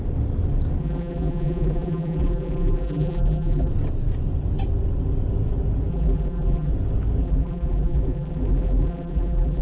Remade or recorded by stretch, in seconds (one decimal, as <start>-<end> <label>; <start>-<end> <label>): 0.0-0.8 recorded; 0.8-3.7 remade; 3.7-5.9 recorded; 5.9-6.7 remade; 6.7-7.2 recorded; 7.2-9.6 remade